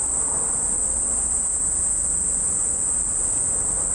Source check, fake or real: real